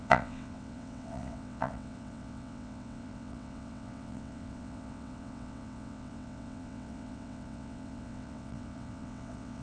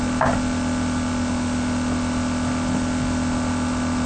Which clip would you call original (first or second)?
second